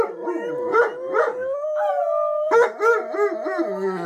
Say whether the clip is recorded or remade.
recorded